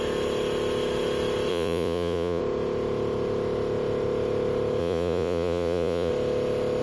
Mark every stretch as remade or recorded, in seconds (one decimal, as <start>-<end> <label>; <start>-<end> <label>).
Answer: 0.0-1.5 recorded; 1.5-2.4 remade; 2.4-4.8 recorded; 4.8-6.1 remade; 6.1-6.8 recorded